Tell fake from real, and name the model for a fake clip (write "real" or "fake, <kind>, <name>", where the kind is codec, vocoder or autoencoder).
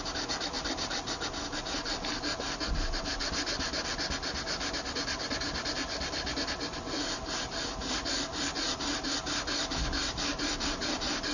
real